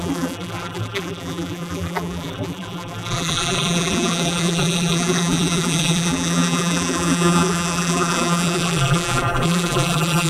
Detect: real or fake fake